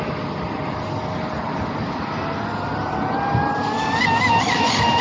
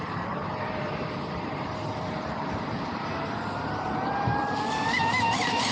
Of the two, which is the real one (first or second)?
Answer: first